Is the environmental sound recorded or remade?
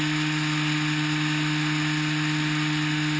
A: recorded